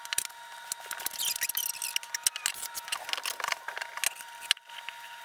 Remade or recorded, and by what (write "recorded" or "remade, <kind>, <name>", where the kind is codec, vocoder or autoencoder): recorded